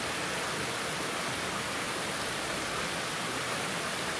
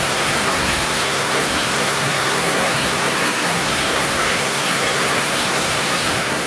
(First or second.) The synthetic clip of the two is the second